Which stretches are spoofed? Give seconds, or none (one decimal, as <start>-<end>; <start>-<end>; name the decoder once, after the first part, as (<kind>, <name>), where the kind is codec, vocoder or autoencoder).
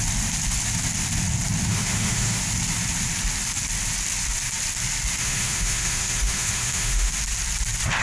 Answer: 1.7-2.4 (autoencoder, DAC-VAE); 5.2-7.1